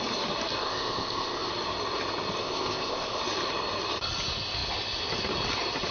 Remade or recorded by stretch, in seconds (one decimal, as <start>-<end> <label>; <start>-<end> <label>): 0.0-0.6 recorded; 0.6-1.5 remade; 1.5-2.4 recorded; 2.4-3.2 remade; 3.2-5.9 recorded